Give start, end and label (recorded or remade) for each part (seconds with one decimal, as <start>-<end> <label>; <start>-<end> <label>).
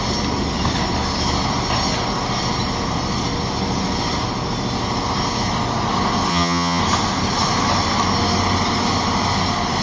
0.0-6.3 recorded; 6.3-6.8 remade; 6.8-9.8 recorded